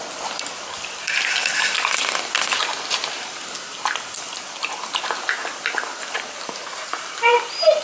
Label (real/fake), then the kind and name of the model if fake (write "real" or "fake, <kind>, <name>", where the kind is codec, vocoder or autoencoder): real